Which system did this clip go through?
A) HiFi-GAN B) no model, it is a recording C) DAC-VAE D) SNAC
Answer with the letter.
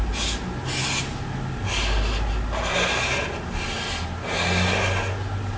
B